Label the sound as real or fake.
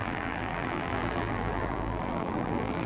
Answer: fake